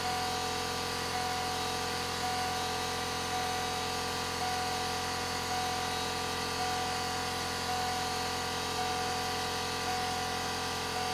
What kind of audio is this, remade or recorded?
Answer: recorded